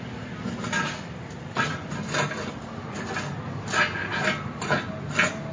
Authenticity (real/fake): real